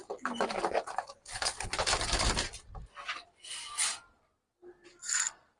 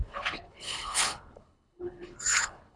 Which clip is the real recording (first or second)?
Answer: first